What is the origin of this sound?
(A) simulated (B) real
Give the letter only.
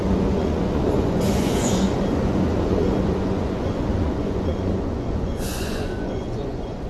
A